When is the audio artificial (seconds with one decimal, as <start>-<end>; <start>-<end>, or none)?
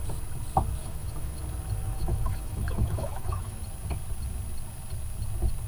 0.8-1.4; 1.9-3.6